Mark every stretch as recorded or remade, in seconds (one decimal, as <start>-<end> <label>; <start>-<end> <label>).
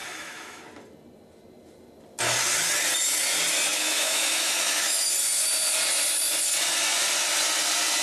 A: 0.0-0.6 remade; 0.6-3.7 recorded; 3.7-5.0 remade; 5.0-8.0 recorded